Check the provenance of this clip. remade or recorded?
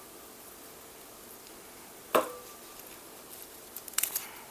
recorded